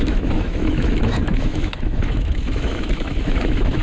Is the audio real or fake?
fake